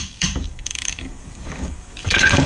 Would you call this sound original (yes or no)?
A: no